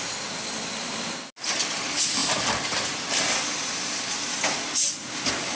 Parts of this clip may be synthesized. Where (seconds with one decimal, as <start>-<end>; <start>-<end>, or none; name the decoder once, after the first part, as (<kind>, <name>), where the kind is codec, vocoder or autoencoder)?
none